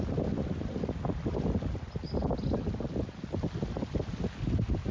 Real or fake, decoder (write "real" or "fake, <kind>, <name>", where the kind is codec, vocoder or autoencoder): real